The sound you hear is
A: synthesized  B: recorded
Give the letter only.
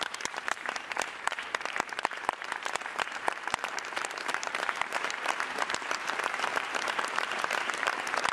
A